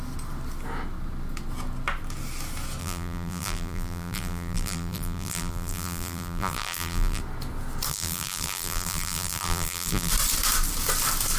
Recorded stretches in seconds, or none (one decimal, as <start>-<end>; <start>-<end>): 0.0-2.8; 7.2-7.9; 10.1-11.4